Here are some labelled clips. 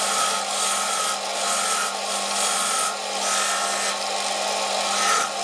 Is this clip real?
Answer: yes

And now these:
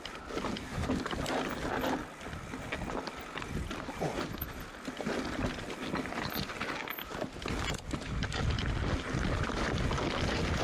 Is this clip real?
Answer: yes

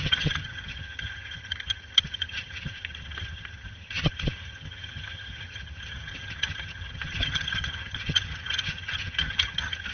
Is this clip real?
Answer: no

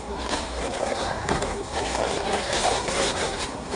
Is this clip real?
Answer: no